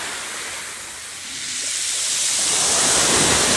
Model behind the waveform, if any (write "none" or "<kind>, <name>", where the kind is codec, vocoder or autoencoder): none